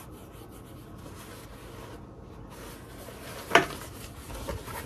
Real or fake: real